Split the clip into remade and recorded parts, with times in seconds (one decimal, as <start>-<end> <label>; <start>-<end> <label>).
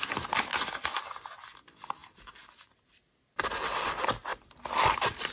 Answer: 0.0-5.3 recorded